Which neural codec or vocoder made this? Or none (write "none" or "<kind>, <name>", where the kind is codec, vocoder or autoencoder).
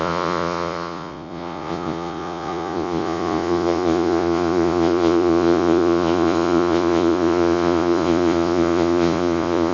vocoder, Vocos